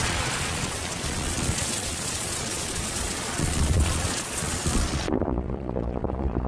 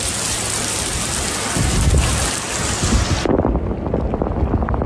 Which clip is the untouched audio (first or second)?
second